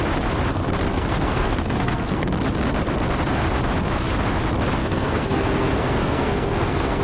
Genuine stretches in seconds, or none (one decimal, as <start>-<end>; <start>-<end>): 0.0-0.9; 2.3-4.8